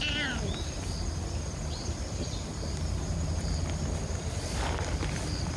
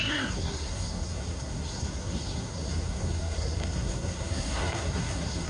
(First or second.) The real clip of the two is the first